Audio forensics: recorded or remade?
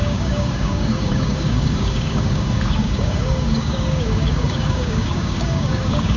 remade